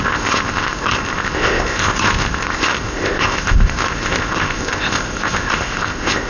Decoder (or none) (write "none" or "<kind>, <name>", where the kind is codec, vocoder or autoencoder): codec, ZipCodec